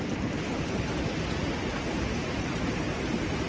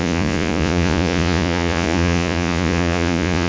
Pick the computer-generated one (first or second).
second